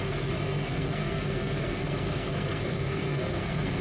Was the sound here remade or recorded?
remade